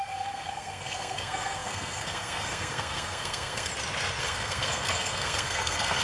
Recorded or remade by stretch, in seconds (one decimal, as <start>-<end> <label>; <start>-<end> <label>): 0.0-3.7 remade; 3.7-4.2 recorded; 4.2-6.0 remade